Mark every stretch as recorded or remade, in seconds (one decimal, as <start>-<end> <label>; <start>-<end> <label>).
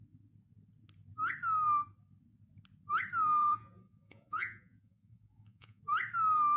0.0-3.4 recorded; 3.4-5.8 remade; 5.8-6.6 recorded